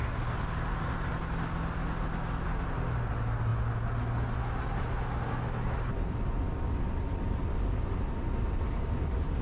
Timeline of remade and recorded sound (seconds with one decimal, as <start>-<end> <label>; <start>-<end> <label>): 0.0-9.4 recorded